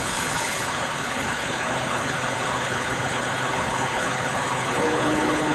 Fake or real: fake